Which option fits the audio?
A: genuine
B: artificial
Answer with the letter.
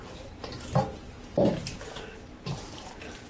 A